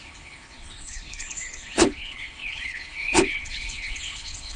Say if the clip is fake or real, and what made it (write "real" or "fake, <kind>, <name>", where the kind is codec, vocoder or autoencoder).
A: fake, codec, HILCodec